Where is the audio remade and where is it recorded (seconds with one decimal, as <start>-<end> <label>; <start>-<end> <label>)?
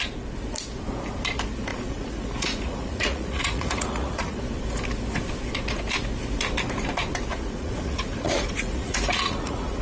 0.0-1.7 recorded; 1.7-4.4 remade; 4.4-7.3 recorded; 7.3-9.8 remade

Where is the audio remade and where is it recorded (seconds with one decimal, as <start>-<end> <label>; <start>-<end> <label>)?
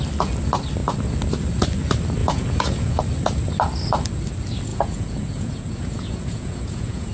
0.0-2.2 recorded; 2.2-3.0 remade; 3.0-4.7 recorded; 4.7-7.1 remade